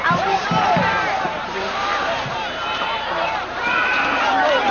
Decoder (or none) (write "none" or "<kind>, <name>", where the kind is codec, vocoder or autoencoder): vocoder, BigVGAN v2